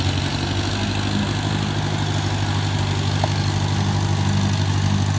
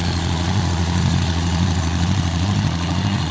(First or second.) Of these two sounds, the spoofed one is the second